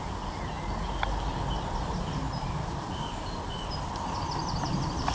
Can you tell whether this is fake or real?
real